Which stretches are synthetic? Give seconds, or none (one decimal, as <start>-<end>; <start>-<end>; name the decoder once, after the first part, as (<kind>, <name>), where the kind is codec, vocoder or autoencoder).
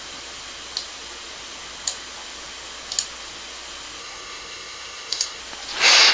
4.0-5.4 (codec, SNAC)